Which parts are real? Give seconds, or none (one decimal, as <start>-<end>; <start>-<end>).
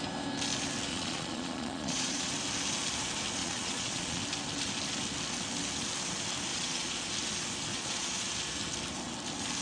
0.0-0.9; 2.3-3.4; 4.2-6.5; 7.1-7.7; 8.3-9.6